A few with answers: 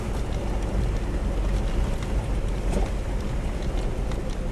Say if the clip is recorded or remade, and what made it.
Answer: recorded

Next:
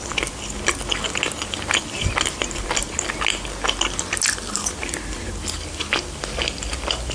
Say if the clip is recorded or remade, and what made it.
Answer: recorded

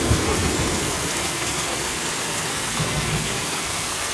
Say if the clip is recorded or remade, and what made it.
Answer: remade, codec, SNAC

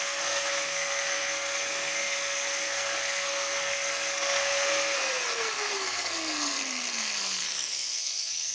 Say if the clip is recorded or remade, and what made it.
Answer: remade, codec, SNAC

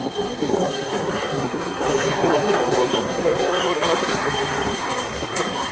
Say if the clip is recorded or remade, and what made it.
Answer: remade, codec, SNAC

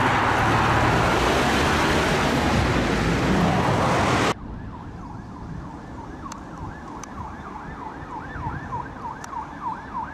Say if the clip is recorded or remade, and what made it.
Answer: recorded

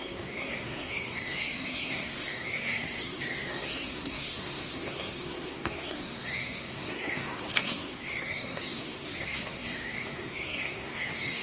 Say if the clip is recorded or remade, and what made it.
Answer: remade, codec, SNAC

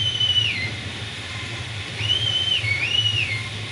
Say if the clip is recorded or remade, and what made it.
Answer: recorded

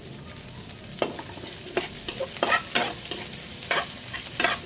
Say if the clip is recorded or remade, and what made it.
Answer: recorded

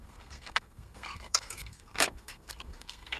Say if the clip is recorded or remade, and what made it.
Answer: remade, codec, SNAC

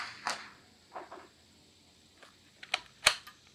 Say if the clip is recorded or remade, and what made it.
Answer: recorded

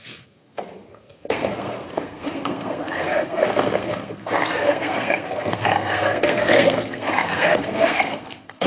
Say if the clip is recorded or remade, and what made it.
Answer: remade, codec, SNAC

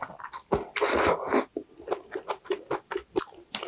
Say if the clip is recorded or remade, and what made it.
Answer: recorded